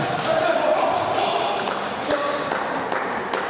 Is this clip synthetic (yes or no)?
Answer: no